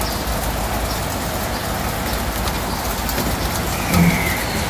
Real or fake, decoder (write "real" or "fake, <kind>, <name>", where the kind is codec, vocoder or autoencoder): real